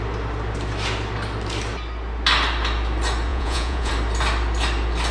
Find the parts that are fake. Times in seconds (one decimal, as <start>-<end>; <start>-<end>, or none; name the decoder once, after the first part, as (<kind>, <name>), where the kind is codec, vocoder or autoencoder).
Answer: 3.3-3.9 (vocoder, Vocos)

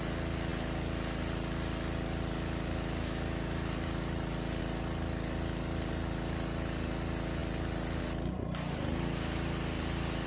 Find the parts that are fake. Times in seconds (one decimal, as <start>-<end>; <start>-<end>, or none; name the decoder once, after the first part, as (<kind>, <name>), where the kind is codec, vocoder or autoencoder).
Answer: none

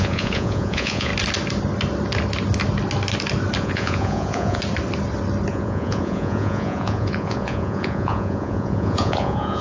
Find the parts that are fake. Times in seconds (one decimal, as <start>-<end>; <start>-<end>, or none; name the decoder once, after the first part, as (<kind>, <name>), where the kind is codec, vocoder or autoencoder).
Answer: 0.0-1.1 (vocoder, Vocos); 3.6-4.6; 5.5-9.6